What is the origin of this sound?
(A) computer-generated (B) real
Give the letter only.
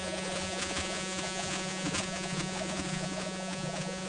A